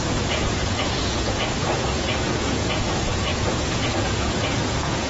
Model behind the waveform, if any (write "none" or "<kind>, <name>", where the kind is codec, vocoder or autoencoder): vocoder, Vocos